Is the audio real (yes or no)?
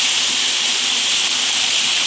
yes